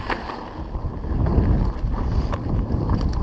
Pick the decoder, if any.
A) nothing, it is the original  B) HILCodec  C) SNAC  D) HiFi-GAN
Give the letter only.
A